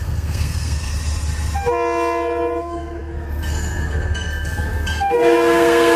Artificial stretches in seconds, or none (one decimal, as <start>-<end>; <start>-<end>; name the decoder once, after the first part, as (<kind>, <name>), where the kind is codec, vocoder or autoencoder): 0.0-0.9 (codec, SNAC); 2.6-6.0